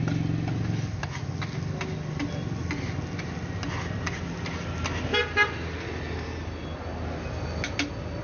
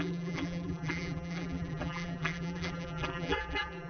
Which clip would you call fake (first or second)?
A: second